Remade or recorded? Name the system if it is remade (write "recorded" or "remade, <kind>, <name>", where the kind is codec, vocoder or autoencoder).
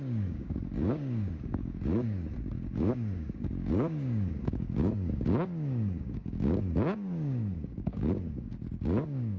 remade, codec, DAC